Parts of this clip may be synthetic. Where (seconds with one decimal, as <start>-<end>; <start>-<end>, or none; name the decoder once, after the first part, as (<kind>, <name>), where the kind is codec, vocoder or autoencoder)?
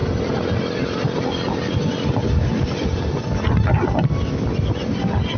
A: none